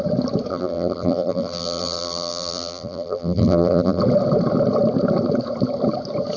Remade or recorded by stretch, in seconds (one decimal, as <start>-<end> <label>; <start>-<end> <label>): 0.0-0.5 recorded; 0.5-4.0 remade; 4.0-6.4 recorded